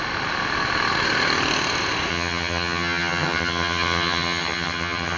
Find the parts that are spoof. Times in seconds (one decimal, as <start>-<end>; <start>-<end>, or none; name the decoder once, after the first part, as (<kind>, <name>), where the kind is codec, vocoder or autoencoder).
2.1-5.2 (vocoder, HiFi-GAN)